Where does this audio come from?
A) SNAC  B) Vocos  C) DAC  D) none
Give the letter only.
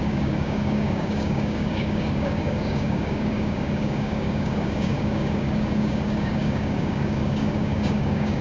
C